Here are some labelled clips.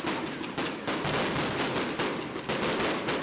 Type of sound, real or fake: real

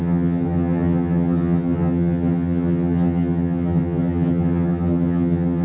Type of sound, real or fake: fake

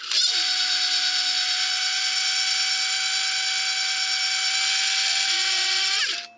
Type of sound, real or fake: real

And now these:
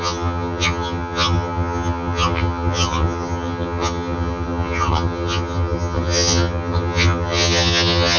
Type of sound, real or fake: fake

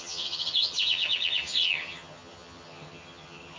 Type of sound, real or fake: fake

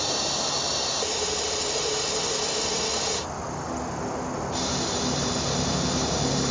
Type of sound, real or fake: real